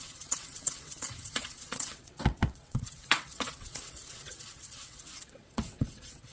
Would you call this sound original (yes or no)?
no